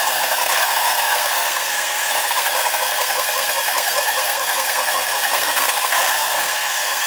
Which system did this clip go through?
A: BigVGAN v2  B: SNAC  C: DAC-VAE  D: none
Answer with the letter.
B